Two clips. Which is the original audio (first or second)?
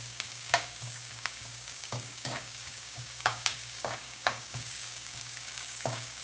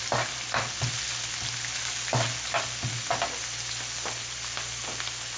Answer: second